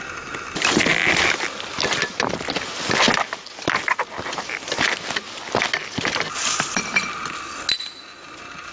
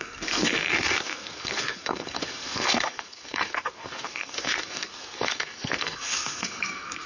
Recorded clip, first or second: first